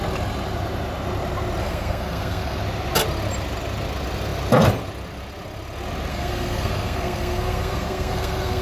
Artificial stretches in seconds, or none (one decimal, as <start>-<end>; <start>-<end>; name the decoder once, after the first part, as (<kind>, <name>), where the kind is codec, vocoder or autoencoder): 1.6-2.6 (codec, SNAC); 6.1-8.6